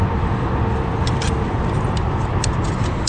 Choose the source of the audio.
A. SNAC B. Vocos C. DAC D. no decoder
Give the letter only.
D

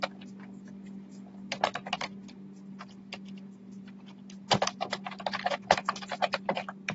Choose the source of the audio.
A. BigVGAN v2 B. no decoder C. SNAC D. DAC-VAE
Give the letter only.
B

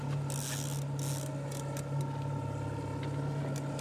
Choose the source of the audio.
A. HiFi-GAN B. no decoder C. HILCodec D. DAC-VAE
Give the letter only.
B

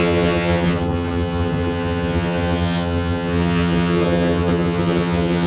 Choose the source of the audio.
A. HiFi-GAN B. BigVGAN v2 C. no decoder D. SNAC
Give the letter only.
A